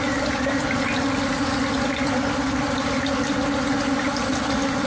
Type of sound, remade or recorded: recorded